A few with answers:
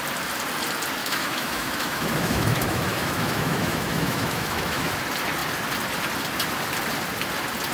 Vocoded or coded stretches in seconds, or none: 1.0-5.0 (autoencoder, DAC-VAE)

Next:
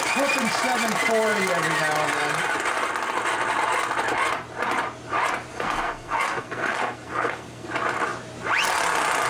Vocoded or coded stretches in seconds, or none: 5.5-7.7 (codec, SNAC)

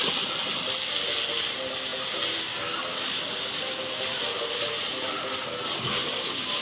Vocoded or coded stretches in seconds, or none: none

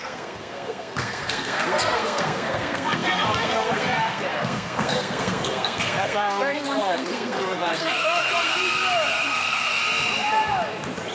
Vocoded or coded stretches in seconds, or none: 0.0-9.8 (codec, SNAC)

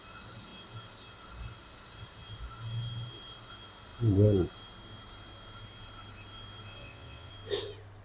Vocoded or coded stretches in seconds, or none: 6.8-7.3 (vocoder, WaveNeXt)

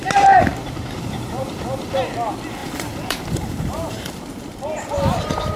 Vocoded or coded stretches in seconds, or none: 0.0-2.0 (vocoder, BigVGAN v2); 2.6-4.2

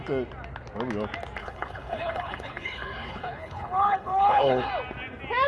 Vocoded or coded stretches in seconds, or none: 1.4-4.7 (codec, HILCodec)